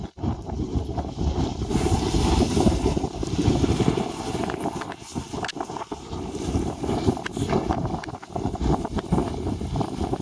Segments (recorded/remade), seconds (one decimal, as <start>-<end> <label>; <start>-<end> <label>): 0.0-9.2 remade; 9.2-10.2 recorded